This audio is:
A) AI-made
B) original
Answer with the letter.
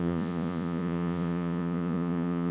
A